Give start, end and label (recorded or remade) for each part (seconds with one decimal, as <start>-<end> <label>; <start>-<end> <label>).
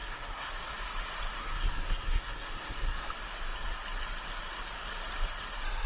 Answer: 0.0-0.5 remade; 0.5-1.4 recorded; 1.4-3.1 remade; 3.1-5.9 recorded